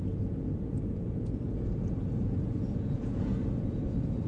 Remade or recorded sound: remade